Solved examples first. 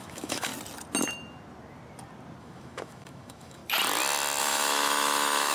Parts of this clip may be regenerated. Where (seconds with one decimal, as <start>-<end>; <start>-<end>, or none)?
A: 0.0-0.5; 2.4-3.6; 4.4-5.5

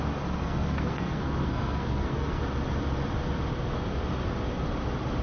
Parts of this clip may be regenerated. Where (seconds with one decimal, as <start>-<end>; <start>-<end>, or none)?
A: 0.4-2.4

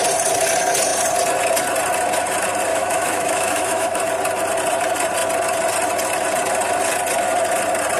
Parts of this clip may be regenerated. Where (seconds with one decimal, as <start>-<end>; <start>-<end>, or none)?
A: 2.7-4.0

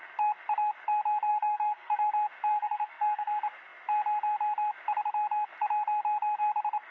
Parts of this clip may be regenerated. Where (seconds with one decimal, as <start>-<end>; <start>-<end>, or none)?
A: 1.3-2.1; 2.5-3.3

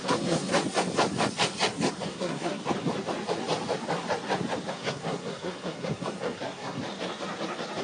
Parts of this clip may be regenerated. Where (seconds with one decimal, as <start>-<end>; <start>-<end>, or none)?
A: 0.0-0.5; 1.9-2.6; 4.7-6.8